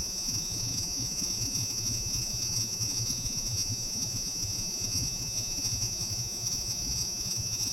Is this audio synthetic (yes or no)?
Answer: yes